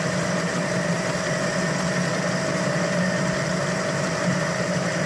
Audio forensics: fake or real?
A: real